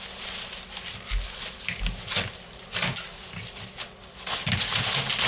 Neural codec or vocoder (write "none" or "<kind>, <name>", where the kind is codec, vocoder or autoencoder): none